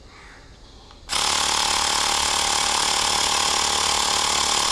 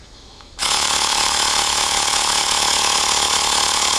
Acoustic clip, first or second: first